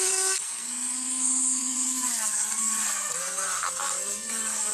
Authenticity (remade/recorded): remade